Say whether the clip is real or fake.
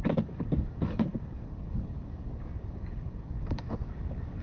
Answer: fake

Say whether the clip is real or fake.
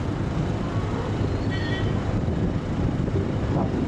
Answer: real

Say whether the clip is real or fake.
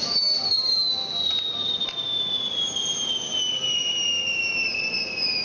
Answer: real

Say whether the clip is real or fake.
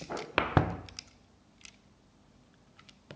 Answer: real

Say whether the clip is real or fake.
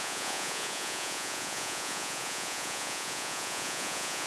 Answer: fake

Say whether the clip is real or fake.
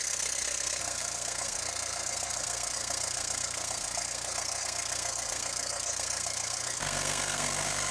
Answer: fake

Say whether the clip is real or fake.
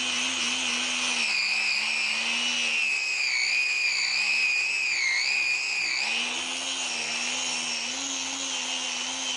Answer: real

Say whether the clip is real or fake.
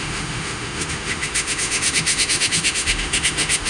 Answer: fake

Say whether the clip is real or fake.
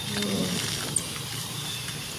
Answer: real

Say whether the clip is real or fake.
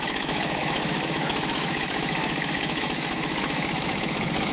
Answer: fake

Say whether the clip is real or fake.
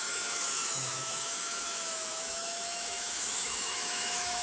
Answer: fake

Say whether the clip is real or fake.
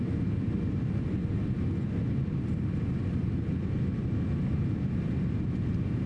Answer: real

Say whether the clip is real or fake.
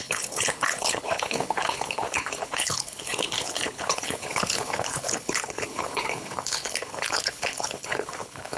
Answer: fake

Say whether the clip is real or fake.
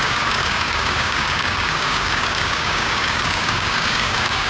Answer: fake